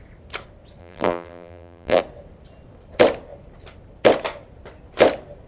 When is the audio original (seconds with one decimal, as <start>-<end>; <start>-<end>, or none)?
0.0-0.8; 2.0-5.5